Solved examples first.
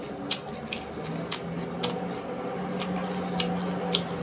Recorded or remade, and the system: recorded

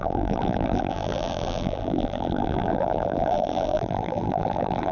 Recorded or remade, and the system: remade, vocoder, BigVGAN v2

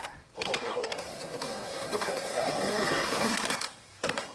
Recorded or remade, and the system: remade, codec, SNAC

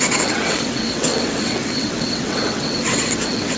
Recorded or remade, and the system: remade, vocoder, WaveNeXt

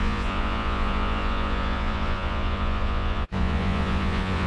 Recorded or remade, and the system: remade, vocoder, Vocos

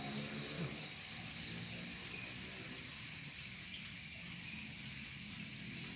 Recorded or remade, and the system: recorded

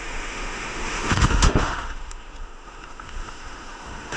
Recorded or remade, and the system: remade, autoencoder, DAC-VAE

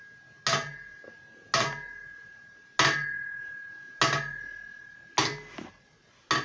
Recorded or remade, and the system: recorded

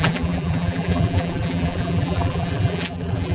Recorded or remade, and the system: remade, vocoder, BigVGAN v2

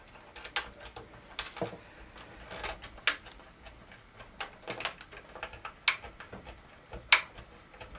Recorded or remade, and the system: recorded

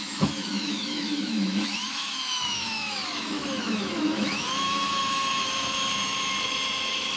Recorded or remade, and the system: remade, autoencoder, DAC-VAE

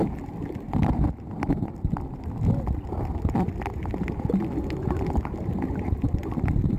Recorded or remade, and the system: recorded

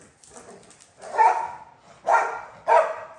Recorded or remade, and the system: recorded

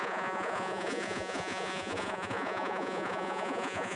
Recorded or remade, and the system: remade, vocoder, Vocos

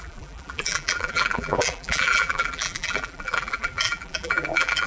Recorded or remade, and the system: remade, vocoder, BigVGAN v2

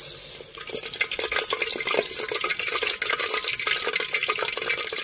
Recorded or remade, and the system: recorded